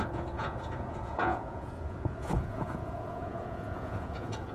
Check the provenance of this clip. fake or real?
fake